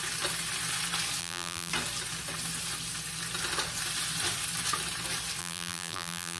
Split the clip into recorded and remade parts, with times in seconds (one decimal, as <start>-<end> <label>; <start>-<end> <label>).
0.0-1.2 recorded; 1.2-1.7 remade; 1.7-5.4 recorded; 5.4-6.4 remade